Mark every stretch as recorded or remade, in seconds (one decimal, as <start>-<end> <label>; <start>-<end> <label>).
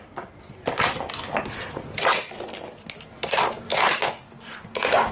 0.0-5.1 recorded